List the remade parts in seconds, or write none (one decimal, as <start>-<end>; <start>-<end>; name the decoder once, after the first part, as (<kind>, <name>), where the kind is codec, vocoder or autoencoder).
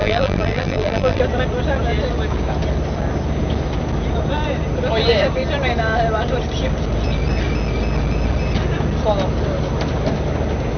0.0-1.2 (vocoder, BigVGAN v2)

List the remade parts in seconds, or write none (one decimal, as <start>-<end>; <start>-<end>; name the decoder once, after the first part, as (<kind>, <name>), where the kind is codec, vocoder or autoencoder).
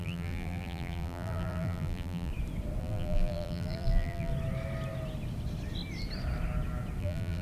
0.0-2.3 (vocoder, BigVGAN v2); 2.8-4.3; 7.0-7.4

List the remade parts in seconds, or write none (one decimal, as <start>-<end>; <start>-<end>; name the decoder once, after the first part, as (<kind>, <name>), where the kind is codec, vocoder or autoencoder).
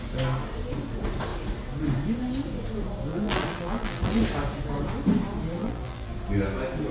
3.1-4.2 (vocoder, BigVGAN v2); 5.6-6.1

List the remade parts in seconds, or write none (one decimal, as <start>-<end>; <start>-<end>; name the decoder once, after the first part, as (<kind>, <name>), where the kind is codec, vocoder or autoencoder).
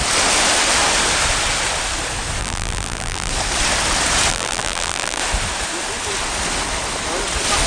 2.4-3.3 (vocoder, BigVGAN v2); 4.3-5.2